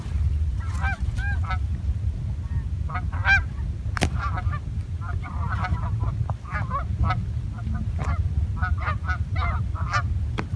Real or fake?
real